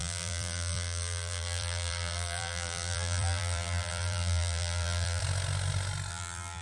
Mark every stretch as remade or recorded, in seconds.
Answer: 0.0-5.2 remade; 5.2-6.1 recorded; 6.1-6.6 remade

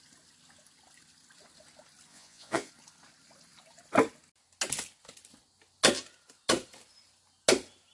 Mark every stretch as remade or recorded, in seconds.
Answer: 0.0-2.1 recorded; 2.1-2.7 remade; 2.7-7.9 recorded